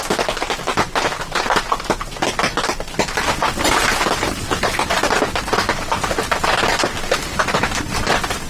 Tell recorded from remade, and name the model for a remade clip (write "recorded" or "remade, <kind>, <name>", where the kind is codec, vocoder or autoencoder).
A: recorded